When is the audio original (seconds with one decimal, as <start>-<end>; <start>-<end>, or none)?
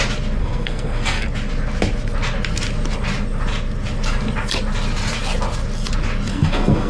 0.0-0.4; 1.3-6.3